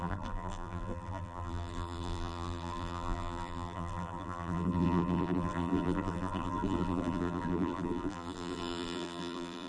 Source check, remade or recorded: remade